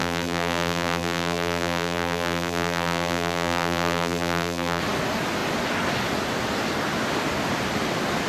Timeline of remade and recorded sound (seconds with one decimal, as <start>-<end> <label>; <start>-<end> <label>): 0.0-4.8 remade; 4.8-8.3 recorded